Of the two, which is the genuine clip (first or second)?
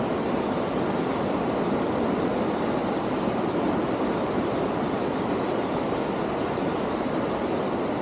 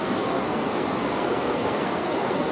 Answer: first